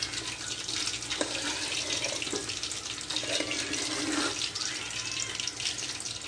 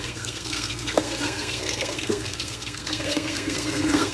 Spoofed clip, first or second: second